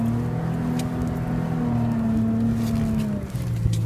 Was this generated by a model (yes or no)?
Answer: no